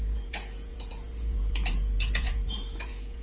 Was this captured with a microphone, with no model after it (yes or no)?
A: no